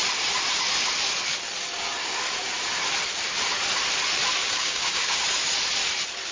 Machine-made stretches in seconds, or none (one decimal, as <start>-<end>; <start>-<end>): 4.4-5.2